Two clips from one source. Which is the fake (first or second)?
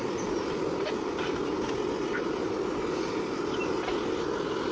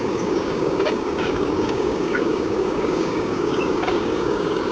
second